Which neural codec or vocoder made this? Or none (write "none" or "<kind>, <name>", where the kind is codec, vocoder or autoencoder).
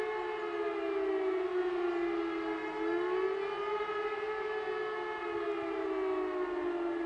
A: none